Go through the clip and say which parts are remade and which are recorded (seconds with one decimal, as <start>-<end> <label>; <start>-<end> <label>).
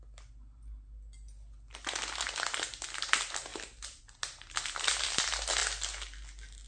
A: 0.0-6.7 recorded